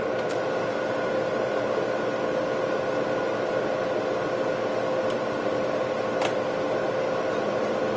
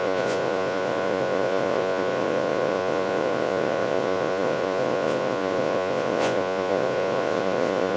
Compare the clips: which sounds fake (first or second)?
second